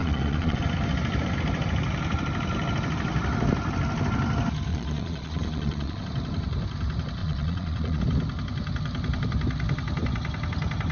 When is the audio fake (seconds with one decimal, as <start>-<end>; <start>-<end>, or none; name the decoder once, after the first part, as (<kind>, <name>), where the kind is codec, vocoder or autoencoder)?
0.0-0.6 (vocoder, Vocos); 4.7-6.0; 7.2-8.0